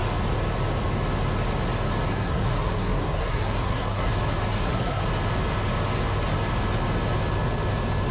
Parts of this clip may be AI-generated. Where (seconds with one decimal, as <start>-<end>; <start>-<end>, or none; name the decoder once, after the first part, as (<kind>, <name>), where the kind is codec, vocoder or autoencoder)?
2.1-4.1 (codec, SNAC); 4.5-5.0